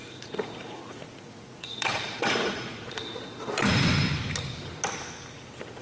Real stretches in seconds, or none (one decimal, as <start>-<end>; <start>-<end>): 3.5-5.8